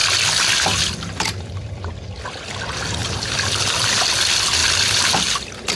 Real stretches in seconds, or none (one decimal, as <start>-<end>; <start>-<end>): 0.0-5.7